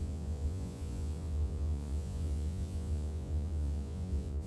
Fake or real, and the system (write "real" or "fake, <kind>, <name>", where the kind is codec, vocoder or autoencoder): fake, vocoder, Vocos